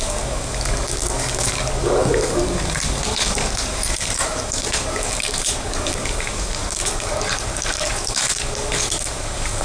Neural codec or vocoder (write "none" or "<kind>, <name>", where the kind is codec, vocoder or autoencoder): codec, DAC